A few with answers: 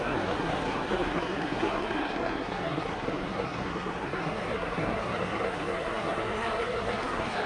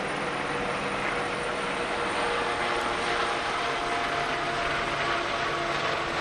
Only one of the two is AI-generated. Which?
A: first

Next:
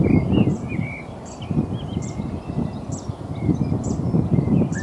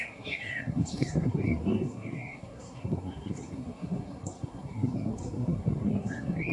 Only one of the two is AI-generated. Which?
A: second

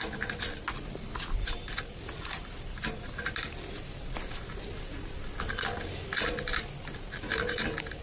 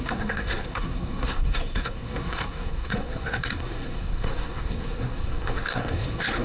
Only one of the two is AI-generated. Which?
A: second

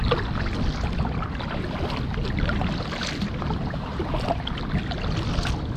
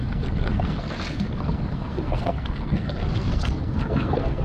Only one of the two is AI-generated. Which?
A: second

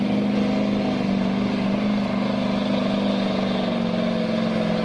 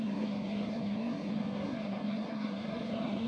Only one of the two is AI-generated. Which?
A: second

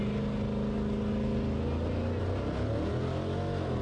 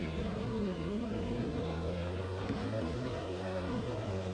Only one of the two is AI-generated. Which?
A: second